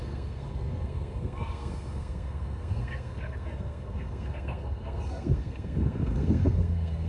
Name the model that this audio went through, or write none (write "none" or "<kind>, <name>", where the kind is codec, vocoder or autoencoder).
codec, SNAC